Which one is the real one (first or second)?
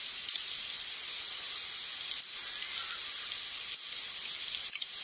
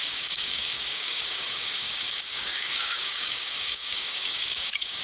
first